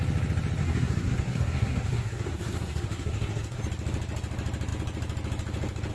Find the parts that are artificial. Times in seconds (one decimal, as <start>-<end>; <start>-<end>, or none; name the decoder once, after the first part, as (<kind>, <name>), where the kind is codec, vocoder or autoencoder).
0.6-3.6 (codec, SNAC)